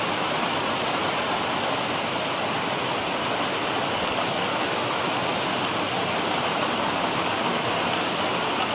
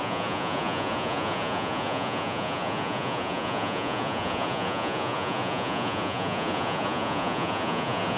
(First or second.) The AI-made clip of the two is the second